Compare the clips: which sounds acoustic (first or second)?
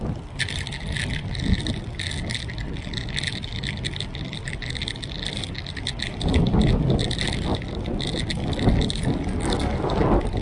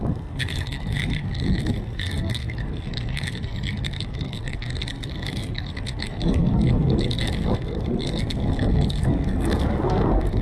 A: first